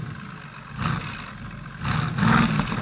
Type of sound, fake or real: real